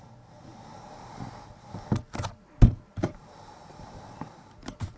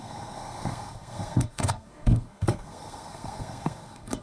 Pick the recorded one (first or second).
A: first